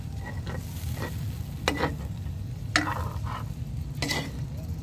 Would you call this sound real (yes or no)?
yes